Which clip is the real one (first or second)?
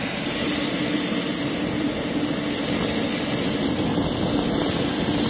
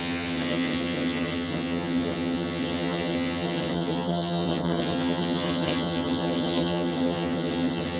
first